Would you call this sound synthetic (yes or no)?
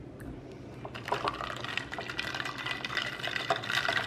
yes